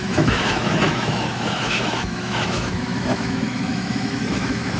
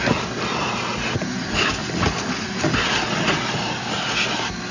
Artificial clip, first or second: first